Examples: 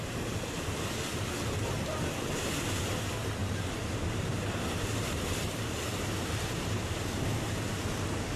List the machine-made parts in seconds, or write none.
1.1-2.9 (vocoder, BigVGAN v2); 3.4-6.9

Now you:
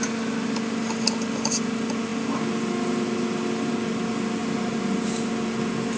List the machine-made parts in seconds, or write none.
none

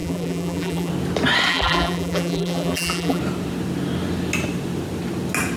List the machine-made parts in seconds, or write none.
0.0-0.9 (vocoder, BigVGAN v2); 1.5-3.2

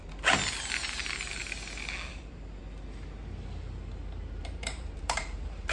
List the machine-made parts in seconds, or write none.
0.7-1.4 (vocoder, BigVGAN v2); 2.1-2.6; 4.4-5.7

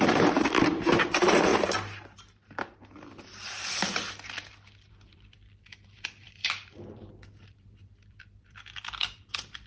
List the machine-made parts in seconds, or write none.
0.0-1.5 (vocoder, BigVGAN v2); 4.9-6.4; 7.1-9.7